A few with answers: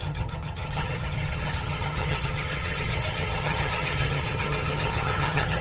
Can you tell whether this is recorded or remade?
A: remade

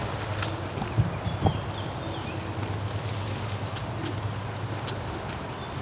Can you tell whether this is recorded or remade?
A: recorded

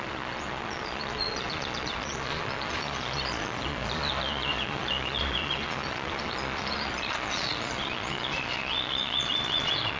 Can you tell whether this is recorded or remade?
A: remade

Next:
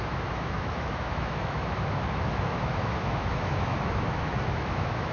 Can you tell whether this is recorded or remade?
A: remade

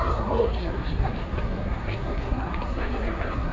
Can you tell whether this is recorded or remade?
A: remade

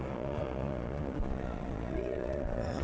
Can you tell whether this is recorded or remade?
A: remade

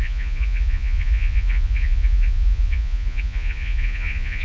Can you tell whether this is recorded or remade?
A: remade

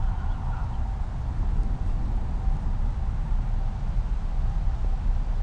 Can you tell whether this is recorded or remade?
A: recorded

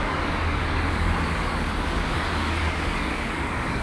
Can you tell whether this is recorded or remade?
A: remade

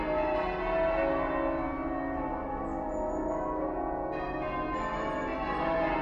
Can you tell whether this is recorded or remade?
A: recorded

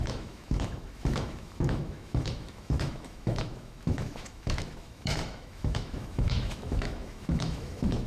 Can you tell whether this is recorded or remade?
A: remade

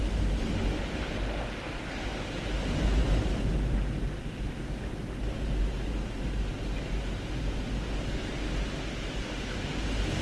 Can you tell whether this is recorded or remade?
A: recorded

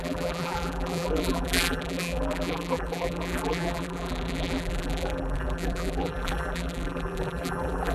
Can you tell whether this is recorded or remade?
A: remade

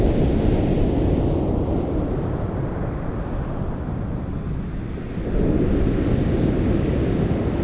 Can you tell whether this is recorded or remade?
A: recorded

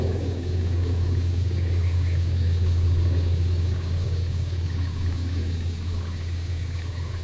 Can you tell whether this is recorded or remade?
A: remade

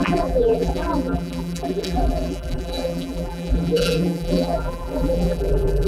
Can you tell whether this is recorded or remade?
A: remade